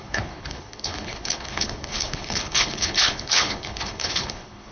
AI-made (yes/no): yes